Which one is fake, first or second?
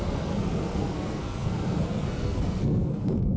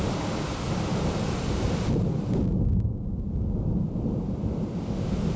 first